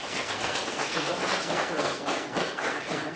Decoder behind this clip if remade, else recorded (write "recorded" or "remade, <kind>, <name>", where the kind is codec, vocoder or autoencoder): remade, codec, SNAC